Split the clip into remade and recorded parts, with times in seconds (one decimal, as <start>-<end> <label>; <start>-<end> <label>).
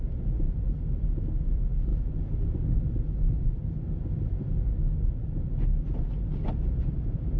0.0-7.4 recorded